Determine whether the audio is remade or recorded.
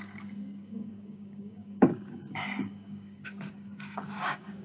remade